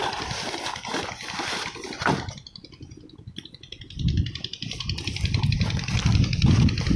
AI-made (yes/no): no